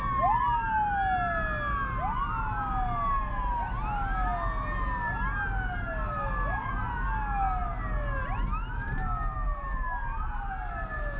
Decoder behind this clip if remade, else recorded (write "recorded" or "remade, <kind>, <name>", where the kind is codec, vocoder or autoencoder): recorded